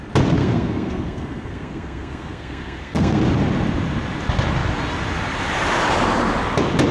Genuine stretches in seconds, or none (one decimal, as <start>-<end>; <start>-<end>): 0.0-0.4; 3.2-6.9